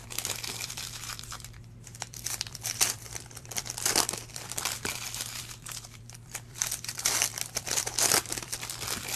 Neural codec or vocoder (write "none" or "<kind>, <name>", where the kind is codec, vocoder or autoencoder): vocoder, BigVGAN v2